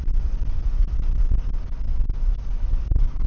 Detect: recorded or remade recorded